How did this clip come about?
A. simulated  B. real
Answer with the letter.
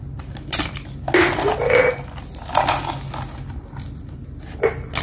B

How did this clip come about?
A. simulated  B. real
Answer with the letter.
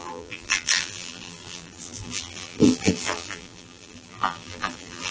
A